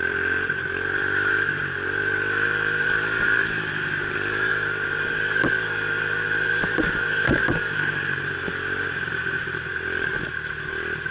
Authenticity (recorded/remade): remade